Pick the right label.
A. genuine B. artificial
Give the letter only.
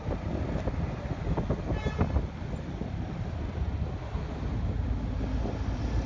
A